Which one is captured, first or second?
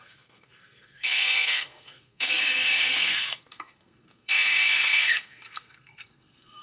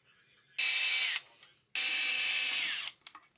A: second